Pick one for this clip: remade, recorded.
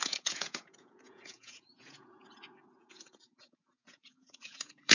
remade